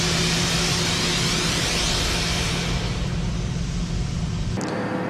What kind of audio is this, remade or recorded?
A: recorded